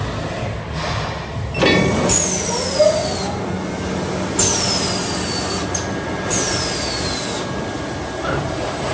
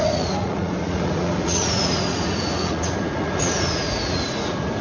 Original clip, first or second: first